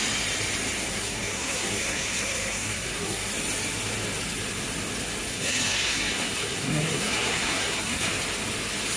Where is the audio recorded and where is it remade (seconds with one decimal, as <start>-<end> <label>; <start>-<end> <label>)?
0.0-0.9 recorded; 0.9-3.3 remade; 3.3-5.3 recorded; 5.3-8.1 remade; 8.1-9.0 recorded